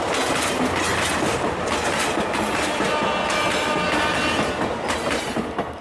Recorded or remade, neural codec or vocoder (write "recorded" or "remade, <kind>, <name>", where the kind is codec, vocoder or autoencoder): recorded